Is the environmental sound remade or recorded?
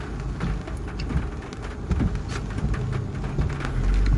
recorded